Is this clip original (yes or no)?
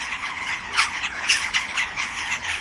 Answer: no